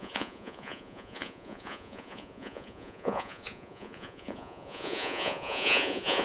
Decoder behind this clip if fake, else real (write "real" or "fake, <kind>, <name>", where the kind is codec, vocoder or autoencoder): fake, vocoder, Vocos